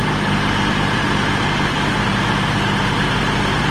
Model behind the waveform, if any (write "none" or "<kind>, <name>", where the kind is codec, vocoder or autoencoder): none